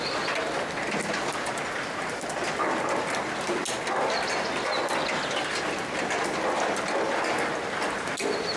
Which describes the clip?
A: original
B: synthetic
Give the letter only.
A